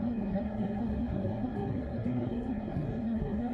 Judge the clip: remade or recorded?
remade